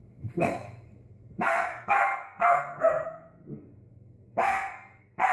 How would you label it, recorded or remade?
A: remade